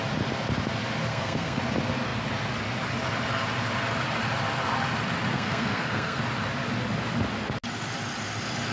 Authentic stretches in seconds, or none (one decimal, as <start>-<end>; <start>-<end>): 0.0-1.1; 1.6-5.3; 6.2-8.7